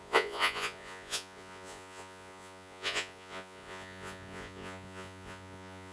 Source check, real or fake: fake